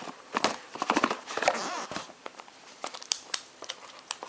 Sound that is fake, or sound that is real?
fake